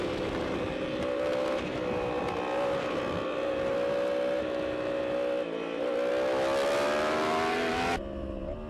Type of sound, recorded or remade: recorded